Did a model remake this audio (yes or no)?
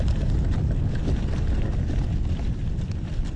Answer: no